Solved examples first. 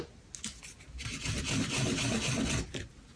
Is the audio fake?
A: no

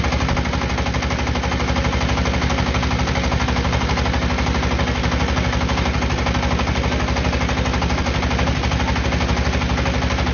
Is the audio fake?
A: no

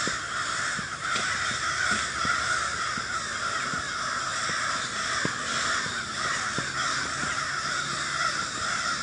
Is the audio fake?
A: no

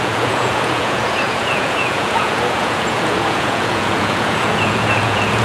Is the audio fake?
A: yes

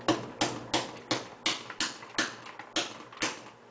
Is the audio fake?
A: no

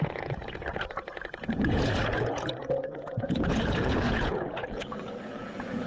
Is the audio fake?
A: yes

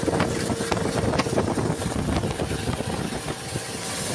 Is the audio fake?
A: no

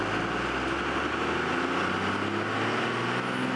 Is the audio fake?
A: no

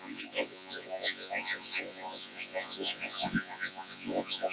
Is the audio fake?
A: yes